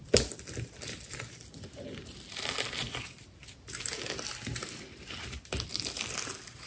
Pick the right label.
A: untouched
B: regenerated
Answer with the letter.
A